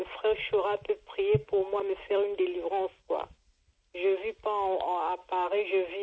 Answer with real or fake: real